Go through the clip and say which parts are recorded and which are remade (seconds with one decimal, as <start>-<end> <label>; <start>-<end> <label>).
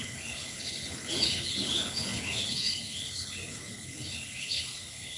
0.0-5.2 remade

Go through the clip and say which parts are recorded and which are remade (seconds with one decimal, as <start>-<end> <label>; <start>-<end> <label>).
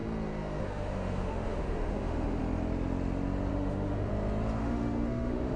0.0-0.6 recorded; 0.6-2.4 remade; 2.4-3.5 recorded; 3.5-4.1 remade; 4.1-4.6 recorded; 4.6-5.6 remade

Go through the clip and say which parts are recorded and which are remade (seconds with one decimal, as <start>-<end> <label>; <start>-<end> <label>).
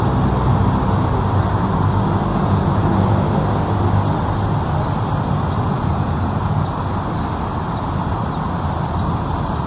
0.0-2.3 recorded; 2.3-3.1 remade; 3.1-5.7 recorded; 5.7-6.8 remade; 6.8-9.7 recorded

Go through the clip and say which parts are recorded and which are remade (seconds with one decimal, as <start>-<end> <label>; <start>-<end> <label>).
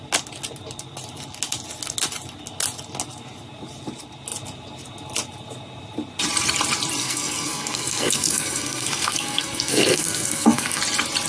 0.0-7.0 recorded; 7.0-10.8 remade; 10.8-11.3 recorded